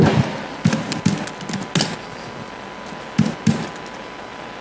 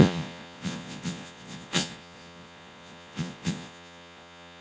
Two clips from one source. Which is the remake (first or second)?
second